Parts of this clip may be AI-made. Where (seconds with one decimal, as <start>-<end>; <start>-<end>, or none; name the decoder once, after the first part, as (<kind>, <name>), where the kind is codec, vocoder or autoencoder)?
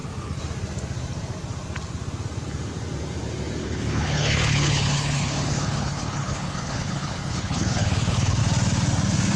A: 3.6-8.4 (codec, HILCodec)